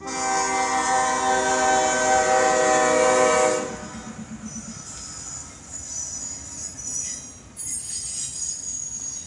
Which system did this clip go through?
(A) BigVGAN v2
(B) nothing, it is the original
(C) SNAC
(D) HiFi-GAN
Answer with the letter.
B